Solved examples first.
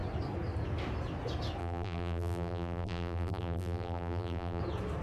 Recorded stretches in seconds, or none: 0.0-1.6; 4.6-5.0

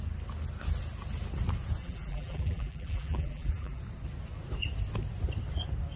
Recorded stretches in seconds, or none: 0.0-1.8; 3.8-6.0

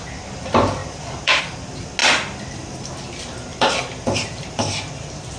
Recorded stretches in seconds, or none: 0.0-0.8; 1.4-2.0; 2.8-3.5; 4.9-5.4

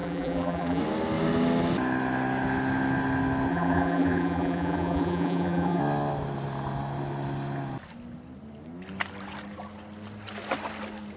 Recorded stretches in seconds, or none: 0.8-3.5; 5.8-11.2

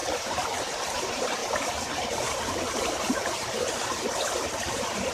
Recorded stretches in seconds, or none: none

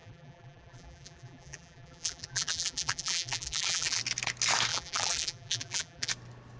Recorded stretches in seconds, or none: 4.0-4.7; 6.1-6.6

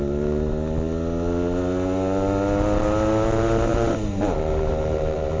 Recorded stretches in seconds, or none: 0.0-3.7